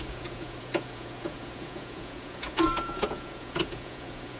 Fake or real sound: fake